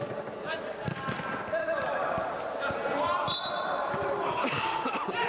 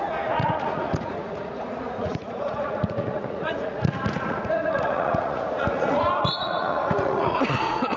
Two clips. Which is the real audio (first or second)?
first